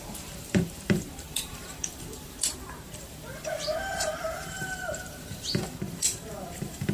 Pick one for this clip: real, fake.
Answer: fake